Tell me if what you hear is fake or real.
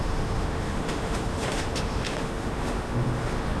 fake